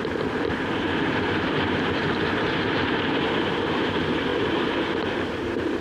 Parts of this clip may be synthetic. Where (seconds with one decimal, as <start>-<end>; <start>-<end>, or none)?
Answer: 0.0-5.8